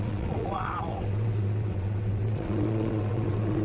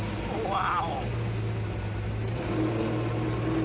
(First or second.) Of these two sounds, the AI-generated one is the first